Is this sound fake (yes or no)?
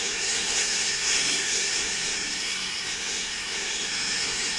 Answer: yes